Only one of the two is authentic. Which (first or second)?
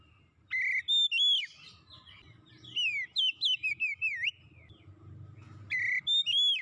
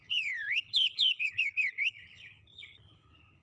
first